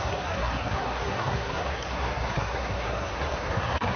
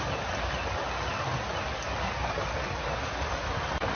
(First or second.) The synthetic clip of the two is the first